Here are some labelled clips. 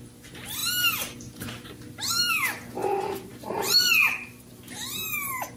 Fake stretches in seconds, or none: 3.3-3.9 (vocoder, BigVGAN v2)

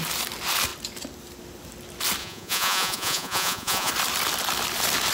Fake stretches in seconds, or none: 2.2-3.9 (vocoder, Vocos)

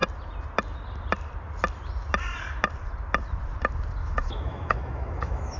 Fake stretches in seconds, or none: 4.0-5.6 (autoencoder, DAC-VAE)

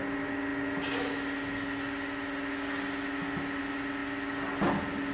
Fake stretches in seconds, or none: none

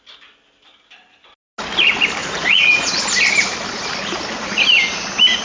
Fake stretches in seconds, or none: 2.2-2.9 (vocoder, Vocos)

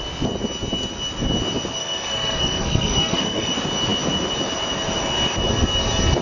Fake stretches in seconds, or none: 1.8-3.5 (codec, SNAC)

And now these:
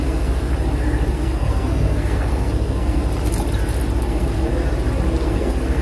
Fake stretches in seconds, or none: 0.0-0.5 (codec, SNAC); 1.1-3.0; 4.0-4.5; 5.2-5.8

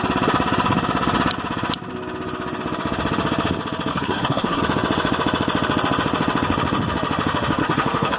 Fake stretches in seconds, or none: 3.9-4.6 (codec, SNAC); 7.6-8.2